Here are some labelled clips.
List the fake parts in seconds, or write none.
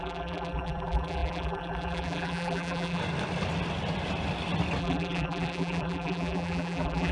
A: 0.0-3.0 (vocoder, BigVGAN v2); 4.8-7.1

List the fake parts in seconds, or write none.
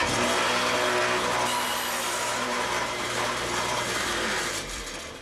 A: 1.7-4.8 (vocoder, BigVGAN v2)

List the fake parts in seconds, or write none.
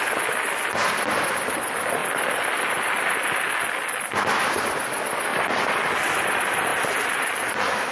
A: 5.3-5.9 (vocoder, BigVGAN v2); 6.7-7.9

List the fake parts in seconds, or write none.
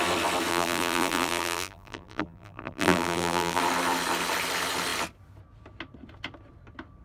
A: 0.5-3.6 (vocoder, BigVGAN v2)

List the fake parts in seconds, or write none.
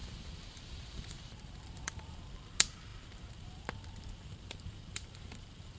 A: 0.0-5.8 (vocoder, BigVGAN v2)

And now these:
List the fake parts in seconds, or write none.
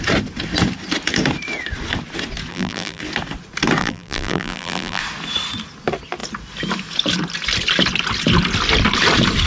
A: 2.5-3.0 (vocoder, BigVGAN v2); 3.8-5.0